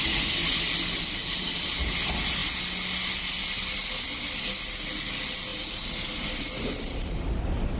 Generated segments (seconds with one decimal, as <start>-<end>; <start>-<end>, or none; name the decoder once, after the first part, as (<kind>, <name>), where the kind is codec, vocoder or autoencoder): 1.2-1.7 (vocoder, BigVGAN v2); 5.5-7.8